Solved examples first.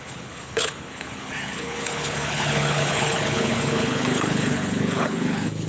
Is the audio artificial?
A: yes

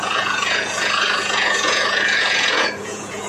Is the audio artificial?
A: yes